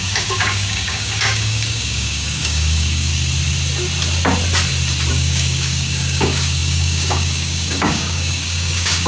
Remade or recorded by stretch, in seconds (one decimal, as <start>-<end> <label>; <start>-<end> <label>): 0.0-3.1 remade; 3.1-5.1 recorded; 5.1-9.1 remade